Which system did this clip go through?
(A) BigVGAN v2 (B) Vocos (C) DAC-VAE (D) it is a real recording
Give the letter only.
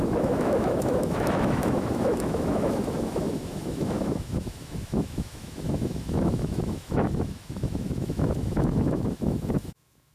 C